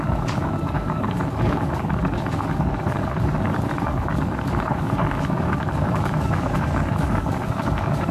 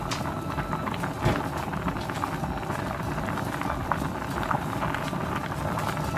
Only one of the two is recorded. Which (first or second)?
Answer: second